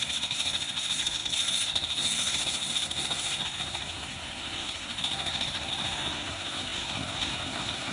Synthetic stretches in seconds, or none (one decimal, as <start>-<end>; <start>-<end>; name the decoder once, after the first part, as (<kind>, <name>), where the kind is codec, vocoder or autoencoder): 0.0-7.9 (codec, SNAC)